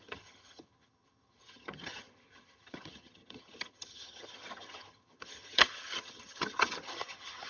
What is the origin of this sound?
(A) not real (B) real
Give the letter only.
A